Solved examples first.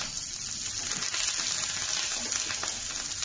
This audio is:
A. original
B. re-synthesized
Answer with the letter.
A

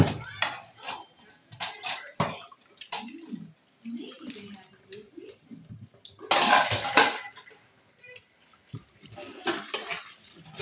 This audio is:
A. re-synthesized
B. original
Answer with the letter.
B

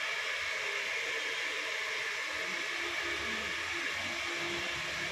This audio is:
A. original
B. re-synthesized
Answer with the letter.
A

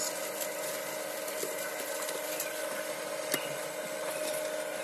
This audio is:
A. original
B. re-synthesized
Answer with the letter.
A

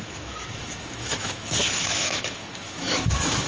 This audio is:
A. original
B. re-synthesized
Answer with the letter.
B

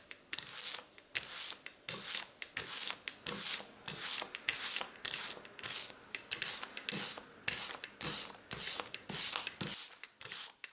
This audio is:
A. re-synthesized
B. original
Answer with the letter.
B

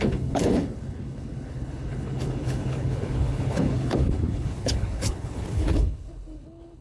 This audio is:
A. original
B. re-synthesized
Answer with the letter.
B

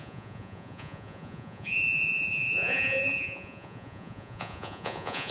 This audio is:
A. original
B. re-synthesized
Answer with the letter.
B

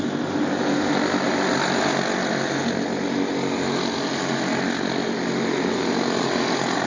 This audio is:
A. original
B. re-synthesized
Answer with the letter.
A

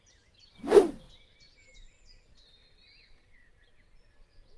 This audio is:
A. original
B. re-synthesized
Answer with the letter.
A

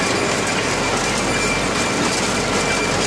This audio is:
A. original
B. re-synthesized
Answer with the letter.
A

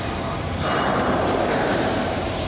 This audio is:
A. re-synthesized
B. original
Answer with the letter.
A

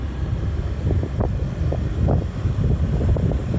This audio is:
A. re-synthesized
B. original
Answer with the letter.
B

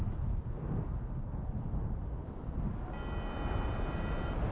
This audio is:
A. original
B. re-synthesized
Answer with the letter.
A